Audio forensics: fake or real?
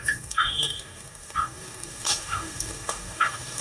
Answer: fake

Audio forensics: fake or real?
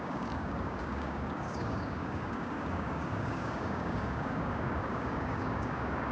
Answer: fake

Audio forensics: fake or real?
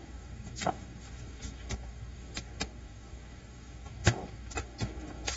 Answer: fake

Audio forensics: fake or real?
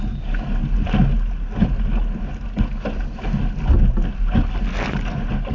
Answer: real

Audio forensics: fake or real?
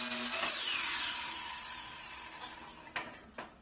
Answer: real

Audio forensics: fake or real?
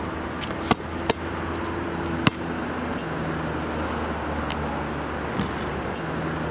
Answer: real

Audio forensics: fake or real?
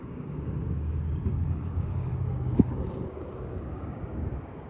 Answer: fake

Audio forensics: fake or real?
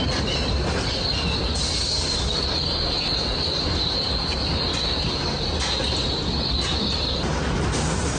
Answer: real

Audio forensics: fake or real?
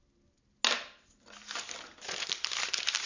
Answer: real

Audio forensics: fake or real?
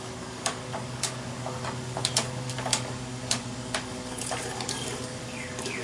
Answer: fake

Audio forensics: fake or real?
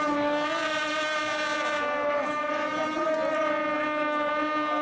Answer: real